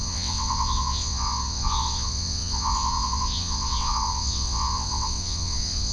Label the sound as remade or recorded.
remade